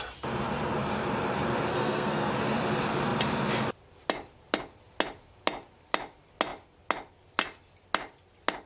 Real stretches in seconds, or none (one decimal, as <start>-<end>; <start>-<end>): 0.0-1.7; 2.3-8.7